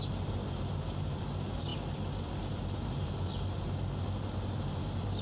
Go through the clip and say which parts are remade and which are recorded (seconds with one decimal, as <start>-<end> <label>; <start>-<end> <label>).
0.0-5.2 recorded